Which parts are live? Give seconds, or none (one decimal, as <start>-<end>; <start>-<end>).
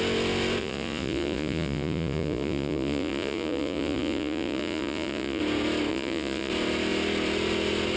0.0-0.6; 5.4-5.9; 6.5-8.0